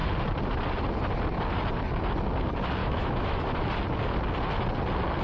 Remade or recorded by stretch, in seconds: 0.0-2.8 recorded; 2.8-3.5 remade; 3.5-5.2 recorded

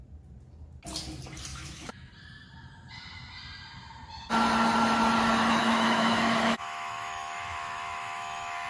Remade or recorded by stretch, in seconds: 0.0-1.5 recorded; 1.5-2.1 remade; 2.1-5.6 recorded; 5.6-8.7 remade